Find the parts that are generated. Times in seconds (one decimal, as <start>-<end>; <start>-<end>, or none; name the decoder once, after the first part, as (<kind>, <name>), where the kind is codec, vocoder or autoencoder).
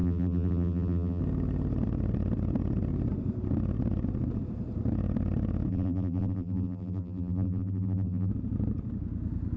0.0-1.2 (vocoder, BigVGAN v2); 5.7-8.3